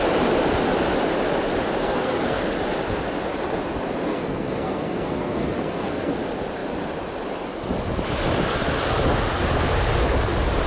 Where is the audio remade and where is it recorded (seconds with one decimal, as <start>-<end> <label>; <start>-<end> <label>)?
0.0-1.8 recorded; 1.8-2.4 remade; 2.4-4.1 recorded; 4.1-6.1 remade; 6.1-10.7 recorded